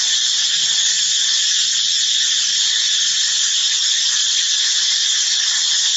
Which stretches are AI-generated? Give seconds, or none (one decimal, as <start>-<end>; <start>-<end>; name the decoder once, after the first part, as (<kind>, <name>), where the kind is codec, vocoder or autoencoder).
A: none